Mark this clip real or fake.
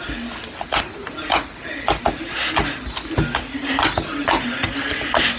real